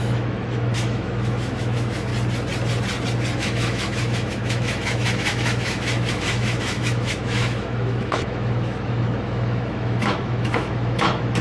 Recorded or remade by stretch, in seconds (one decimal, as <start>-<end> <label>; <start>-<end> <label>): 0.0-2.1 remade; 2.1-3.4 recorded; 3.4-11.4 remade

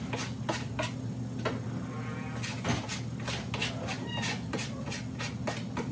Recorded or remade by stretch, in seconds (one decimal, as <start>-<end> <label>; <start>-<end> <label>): 0.0-5.9 recorded

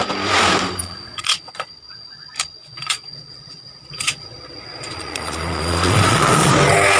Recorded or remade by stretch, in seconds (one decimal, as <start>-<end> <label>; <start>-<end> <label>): 0.0-0.8 recorded; 0.8-1.7 remade; 1.7-2.6 recorded; 2.6-6.5 remade; 6.5-7.0 recorded

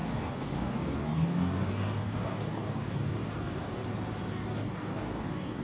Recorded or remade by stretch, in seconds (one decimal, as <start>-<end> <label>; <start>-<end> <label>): 0.0-3.8 remade; 3.8-4.3 recorded; 4.3-5.6 remade